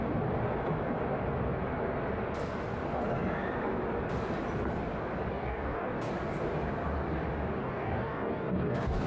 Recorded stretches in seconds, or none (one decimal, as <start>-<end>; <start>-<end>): 0.0-5.3; 6.1-7.6